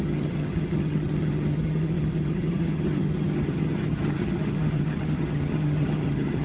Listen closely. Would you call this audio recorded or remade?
remade